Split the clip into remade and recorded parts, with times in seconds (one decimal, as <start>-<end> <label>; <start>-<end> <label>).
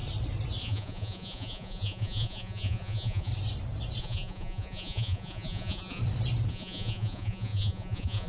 0.0-0.6 recorded; 0.6-3.3 remade; 3.3-4.0 recorded; 4.0-6.0 remade; 6.0-6.5 recorded; 6.5-8.3 remade